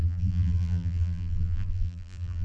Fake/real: fake